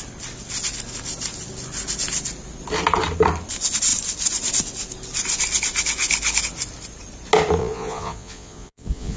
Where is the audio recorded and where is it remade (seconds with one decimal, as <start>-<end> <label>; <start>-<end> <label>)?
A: 0.0-7.6 recorded; 7.6-9.2 remade